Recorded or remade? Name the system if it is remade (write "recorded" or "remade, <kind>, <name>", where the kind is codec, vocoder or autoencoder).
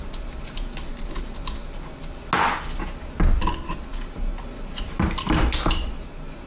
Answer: recorded